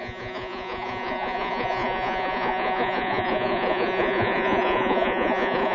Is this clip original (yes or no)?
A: no